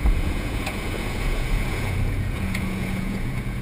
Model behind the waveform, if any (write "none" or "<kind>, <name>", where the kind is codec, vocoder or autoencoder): vocoder, Vocos